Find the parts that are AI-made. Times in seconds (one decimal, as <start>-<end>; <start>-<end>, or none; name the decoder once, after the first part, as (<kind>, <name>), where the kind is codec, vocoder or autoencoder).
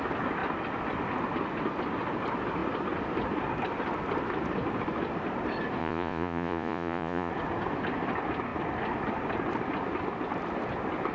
5.8-7.3 (vocoder, Vocos)